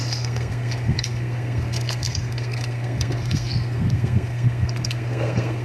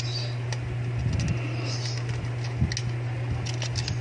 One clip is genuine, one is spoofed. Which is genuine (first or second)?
second